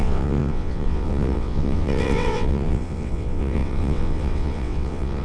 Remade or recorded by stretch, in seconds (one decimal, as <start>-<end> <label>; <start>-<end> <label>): 0.0-5.2 remade